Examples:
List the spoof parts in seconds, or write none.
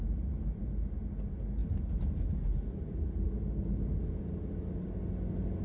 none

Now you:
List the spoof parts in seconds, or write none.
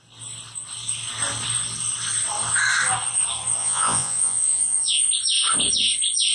3.6-5.0 (vocoder, Vocos)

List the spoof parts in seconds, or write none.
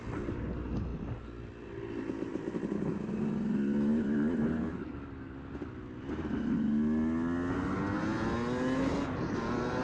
2.3-2.9 (vocoder, BigVGAN v2)